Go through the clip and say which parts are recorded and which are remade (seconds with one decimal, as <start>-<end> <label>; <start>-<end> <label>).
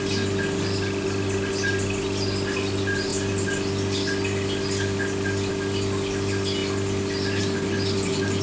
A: 0.0-8.4 recorded